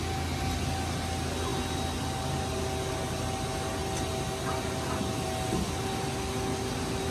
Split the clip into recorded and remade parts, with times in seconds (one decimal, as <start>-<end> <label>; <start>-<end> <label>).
0.0-7.1 recorded